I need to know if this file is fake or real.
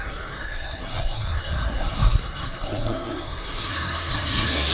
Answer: fake